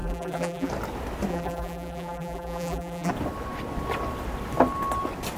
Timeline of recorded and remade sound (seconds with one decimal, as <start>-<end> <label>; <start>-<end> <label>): 0.0-0.7 remade; 0.7-1.3 recorded; 1.3-3.1 remade; 3.1-5.4 recorded